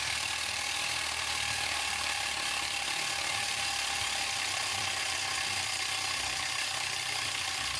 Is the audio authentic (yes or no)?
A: no